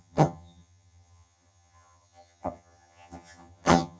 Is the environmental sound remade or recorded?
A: remade